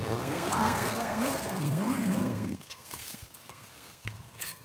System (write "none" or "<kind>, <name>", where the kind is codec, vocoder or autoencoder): codec, SNAC